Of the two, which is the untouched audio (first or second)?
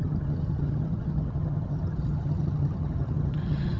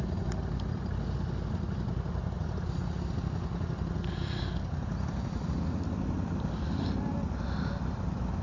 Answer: second